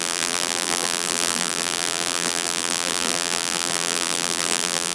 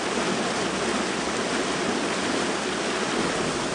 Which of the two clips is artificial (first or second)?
first